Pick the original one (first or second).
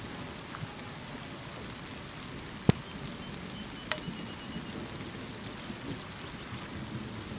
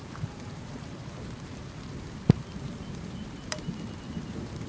first